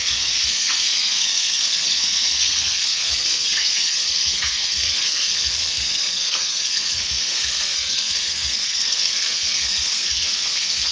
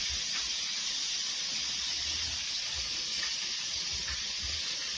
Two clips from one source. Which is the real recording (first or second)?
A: second